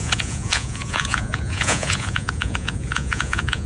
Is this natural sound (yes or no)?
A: no